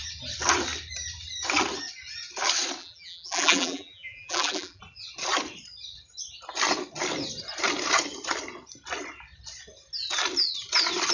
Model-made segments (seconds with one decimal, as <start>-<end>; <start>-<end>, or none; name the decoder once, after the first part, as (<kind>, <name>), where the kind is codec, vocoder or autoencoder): 2.8-4.8 (vocoder, BigVGAN v2)

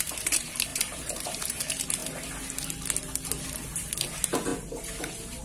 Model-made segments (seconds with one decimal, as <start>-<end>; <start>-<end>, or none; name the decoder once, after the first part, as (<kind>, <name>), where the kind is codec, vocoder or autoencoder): 0.7-1.6 (vocoder, BigVGAN v2)